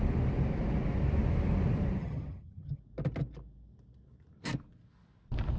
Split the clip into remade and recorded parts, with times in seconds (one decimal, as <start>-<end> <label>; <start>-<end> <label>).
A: 0.0-2.0 recorded; 2.0-2.8 remade; 2.8-5.6 recorded